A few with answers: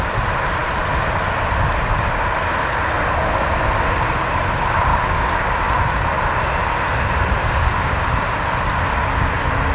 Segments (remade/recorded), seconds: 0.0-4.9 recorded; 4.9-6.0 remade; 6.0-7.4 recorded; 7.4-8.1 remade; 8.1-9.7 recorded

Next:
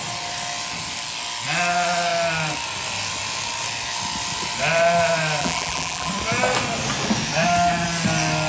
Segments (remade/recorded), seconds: 0.0-5.4 recorded; 5.4-6.1 remade; 6.1-8.5 recorded